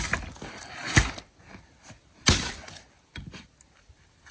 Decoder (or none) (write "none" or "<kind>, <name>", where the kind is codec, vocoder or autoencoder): none